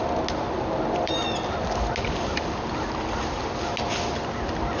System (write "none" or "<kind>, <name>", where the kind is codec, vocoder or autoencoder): none